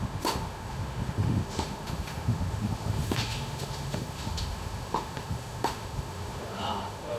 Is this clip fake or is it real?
fake